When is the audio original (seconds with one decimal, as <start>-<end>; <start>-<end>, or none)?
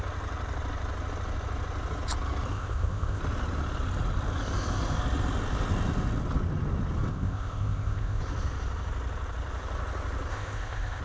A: 0.0-2.5; 3.2-7.1; 8.2-10.3